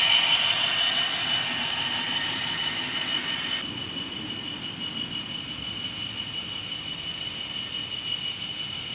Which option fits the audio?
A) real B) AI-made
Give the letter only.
A